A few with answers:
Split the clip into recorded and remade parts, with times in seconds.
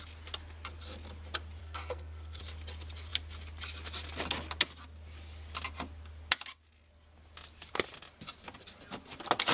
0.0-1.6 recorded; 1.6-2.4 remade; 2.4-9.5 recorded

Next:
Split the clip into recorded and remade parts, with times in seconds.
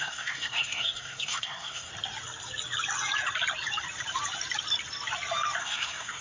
0.0-1.9 remade; 1.9-5.6 recorded; 5.6-6.2 remade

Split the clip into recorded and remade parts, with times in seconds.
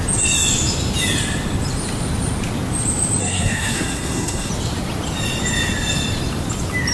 0.0-3.2 recorded; 3.2-4.5 remade; 4.5-6.9 recorded